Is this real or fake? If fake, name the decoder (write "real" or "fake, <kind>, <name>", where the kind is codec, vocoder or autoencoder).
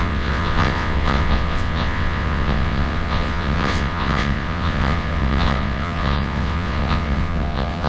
fake, vocoder, WaveNeXt